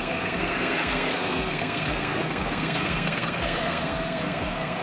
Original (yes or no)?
no